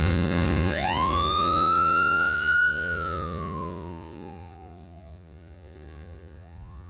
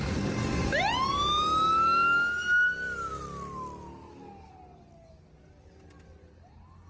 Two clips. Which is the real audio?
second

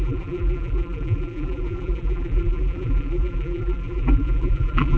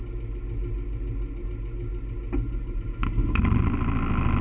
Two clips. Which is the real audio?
second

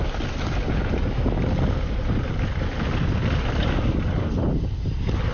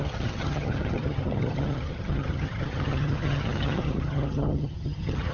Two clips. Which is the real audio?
first